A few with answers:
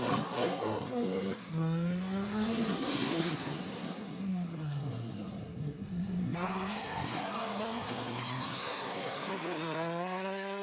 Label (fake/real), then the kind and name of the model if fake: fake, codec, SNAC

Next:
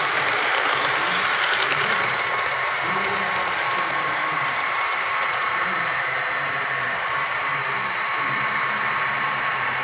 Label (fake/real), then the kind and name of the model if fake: fake, vocoder, BigVGAN v2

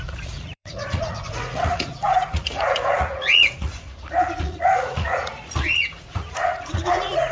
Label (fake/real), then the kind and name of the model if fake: fake, vocoder, Vocos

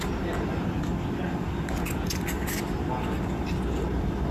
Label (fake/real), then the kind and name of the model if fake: real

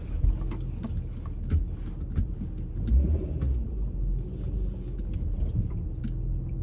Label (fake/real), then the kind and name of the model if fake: real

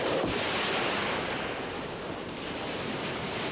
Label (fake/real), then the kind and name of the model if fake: real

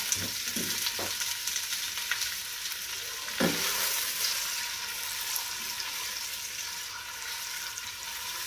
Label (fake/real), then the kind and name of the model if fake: real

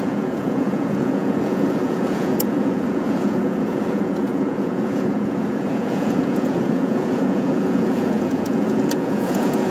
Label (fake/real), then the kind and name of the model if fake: fake, vocoder, Vocos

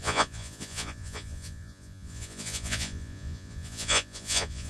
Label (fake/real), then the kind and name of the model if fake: fake, vocoder, Vocos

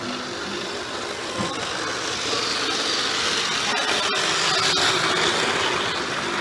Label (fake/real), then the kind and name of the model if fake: real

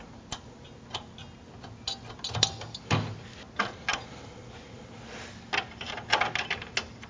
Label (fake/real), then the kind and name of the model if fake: real